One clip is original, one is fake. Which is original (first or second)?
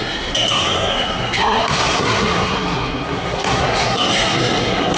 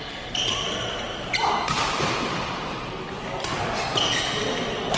second